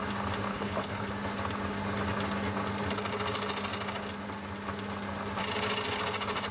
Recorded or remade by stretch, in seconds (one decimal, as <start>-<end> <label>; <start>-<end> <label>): 0.0-0.5 recorded; 0.5-1.1 remade; 1.1-6.5 recorded